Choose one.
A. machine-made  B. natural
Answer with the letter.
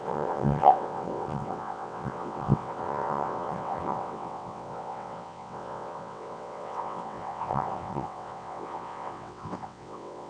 A